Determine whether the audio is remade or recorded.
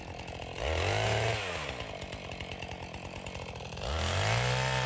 recorded